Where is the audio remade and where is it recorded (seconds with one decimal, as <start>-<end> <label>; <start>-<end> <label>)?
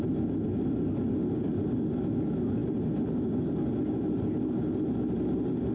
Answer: 0.0-5.7 recorded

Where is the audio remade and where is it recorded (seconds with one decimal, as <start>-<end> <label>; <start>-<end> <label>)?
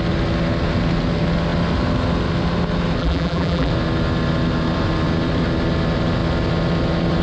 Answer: 0.0-3.0 recorded; 3.0-3.7 remade; 3.7-7.2 recorded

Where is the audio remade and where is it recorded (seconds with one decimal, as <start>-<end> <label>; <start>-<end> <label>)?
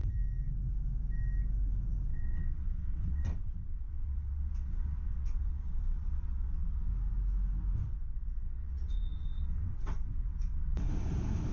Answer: 0.0-2.1 recorded; 2.1-6.9 remade; 6.9-7.9 recorded; 7.9-10.9 remade; 10.9-11.5 recorded